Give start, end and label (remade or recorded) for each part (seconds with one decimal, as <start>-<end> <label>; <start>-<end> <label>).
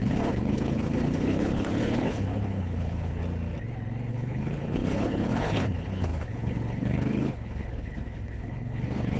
0.0-3.2 remade; 3.2-4.1 recorded; 4.1-9.2 remade